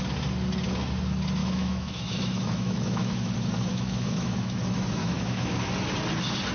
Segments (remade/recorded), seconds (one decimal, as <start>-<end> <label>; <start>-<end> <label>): 0.0-1.4 recorded; 1.4-3.3 remade; 3.3-3.7 recorded; 3.7-4.6 remade; 4.6-5.0 recorded; 5.0-5.6 remade; 5.6-6.5 recorded